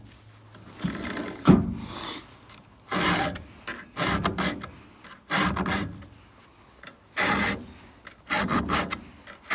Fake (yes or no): no